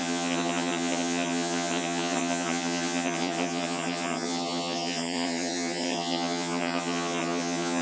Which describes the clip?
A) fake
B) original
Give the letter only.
A